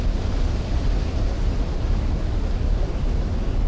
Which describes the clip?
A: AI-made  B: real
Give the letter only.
B